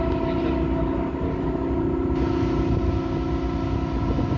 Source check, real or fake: real